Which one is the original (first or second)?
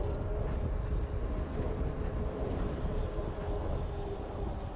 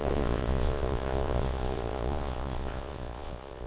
first